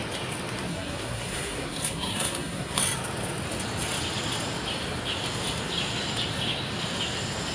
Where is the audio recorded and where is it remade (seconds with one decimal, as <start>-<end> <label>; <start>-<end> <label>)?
0.0-0.7 recorded; 0.7-2.8 remade; 2.8-7.5 recorded

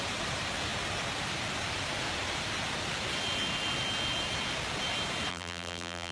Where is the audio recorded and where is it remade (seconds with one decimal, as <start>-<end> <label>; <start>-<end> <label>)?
0.0-5.3 recorded; 5.3-6.1 remade

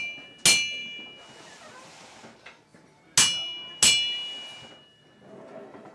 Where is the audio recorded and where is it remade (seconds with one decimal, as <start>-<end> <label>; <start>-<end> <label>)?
0.0-5.9 recorded

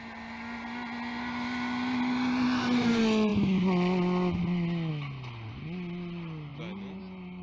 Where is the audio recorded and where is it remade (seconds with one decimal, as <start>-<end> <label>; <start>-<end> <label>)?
0.0-7.4 recorded

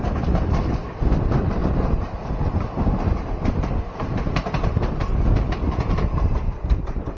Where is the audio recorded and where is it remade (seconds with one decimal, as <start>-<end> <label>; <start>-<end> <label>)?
0.0-7.2 recorded

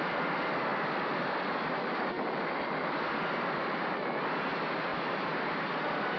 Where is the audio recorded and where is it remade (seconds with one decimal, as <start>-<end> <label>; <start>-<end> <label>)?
0.0-4.9 recorded; 4.9-5.6 remade; 5.6-6.2 recorded

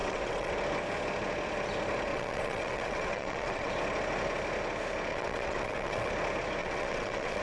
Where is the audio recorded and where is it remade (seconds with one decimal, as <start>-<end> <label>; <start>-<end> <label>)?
0.0-0.5 remade; 0.5-2.1 recorded; 2.1-3.7 remade; 3.7-5.1 recorded; 5.1-6.1 remade; 6.1-6.6 recorded; 6.6-7.4 remade

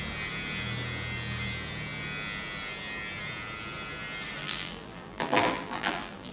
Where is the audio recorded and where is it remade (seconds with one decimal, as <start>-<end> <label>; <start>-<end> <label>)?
0.0-4.4 recorded; 4.4-6.3 remade